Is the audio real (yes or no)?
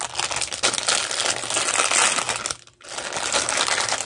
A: yes